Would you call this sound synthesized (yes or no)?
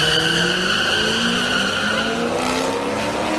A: no